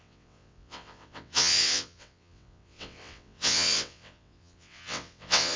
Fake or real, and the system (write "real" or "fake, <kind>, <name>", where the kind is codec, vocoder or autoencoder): fake, vocoder, WaveNeXt